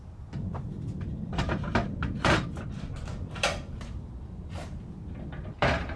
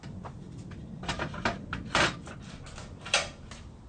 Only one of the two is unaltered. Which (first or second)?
second